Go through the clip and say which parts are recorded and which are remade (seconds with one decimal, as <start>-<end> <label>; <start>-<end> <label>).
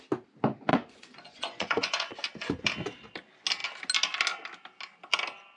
0.0-0.7 recorded; 0.7-2.1 remade; 2.1-5.6 recorded